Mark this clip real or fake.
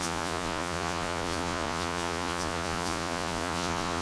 fake